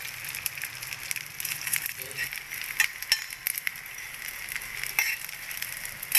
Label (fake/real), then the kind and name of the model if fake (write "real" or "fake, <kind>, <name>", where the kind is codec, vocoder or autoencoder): real